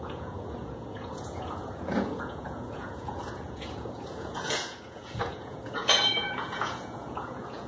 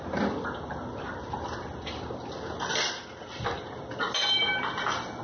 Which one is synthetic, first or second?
first